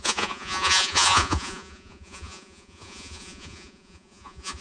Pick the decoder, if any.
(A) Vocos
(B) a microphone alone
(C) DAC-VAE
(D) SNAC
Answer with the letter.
A